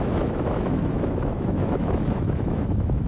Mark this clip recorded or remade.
remade